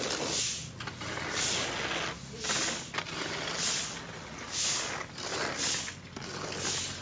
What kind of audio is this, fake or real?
real